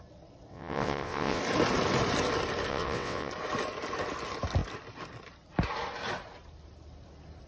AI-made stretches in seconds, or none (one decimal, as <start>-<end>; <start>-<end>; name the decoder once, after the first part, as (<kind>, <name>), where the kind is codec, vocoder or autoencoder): 0.5-1.4 (vocoder, WaveNeXt); 2.7-3.3